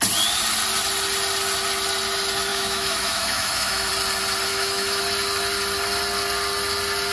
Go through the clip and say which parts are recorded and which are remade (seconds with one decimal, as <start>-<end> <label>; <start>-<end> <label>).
0.0-2.5 recorded; 2.5-3.9 remade; 3.9-4.5 recorded; 4.5-5.0 remade; 5.0-7.1 recorded